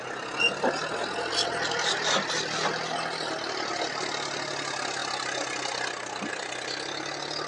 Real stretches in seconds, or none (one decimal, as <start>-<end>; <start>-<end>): 0.0-7.5